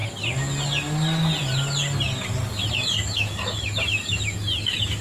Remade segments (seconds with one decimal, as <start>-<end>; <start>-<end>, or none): 2.7-5.0